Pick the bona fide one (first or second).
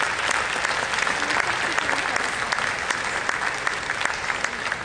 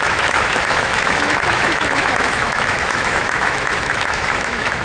first